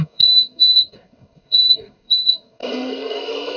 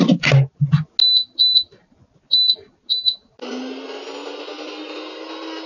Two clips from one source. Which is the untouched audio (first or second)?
second